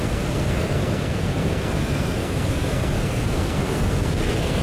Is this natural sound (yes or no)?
no